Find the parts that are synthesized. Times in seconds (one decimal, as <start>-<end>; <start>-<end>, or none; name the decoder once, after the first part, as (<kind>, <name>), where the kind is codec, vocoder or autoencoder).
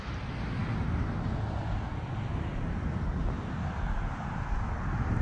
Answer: none